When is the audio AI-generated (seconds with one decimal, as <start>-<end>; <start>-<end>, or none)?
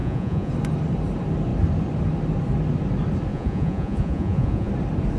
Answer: 0.0-0.5; 3.3-4.7